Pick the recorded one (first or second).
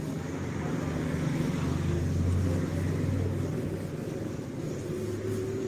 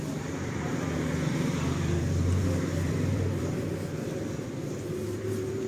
first